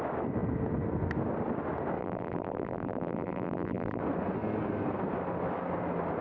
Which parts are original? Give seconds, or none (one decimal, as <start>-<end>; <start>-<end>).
0.0-2.0; 4.0-6.2

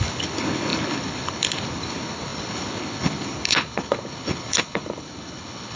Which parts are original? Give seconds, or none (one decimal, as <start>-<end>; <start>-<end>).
none

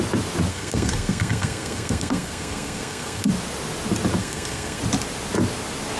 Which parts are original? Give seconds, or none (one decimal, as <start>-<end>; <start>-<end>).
0.0-0.5; 3.3-4.2; 4.8-6.0